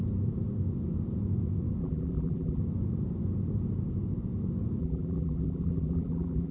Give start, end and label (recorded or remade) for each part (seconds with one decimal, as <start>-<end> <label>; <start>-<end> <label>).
0.0-1.8 recorded; 1.8-2.6 remade; 2.6-4.8 recorded; 4.8-6.5 remade